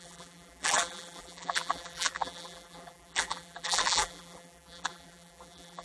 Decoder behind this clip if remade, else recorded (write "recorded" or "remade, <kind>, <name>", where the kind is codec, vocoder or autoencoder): remade, vocoder, BigVGAN v2